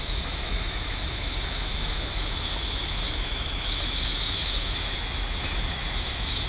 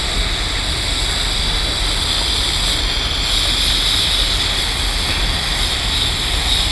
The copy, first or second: first